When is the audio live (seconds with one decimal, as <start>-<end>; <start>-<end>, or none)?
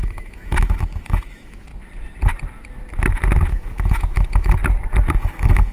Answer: 1.7-3.5; 4.6-5.2